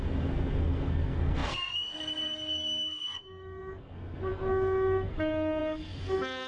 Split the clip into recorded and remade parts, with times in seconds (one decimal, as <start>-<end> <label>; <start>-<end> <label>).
0.0-6.5 remade